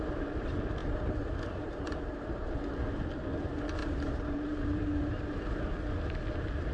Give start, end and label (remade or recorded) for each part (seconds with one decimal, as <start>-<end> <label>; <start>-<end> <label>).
0.0-0.8 recorded; 0.8-2.5 remade; 2.5-3.8 recorded; 3.8-5.6 remade; 5.6-6.7 recorded